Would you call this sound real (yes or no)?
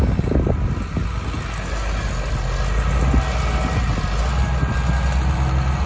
yes